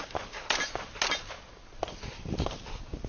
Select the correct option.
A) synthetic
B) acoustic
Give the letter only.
B